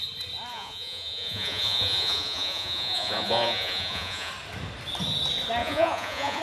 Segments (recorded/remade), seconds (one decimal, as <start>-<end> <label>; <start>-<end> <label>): 0.0-0.5 recorded; 0.5-4.3 remade; 4.3-5.6 recorded; 5.6-6.4 remade